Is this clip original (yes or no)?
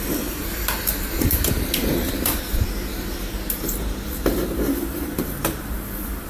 no